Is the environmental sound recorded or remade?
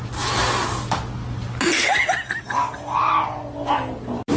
recorded